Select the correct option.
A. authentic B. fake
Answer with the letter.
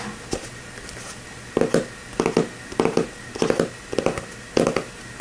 A